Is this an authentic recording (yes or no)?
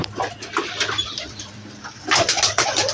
no